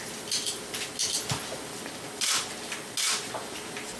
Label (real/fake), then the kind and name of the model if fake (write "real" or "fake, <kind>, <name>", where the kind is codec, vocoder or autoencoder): real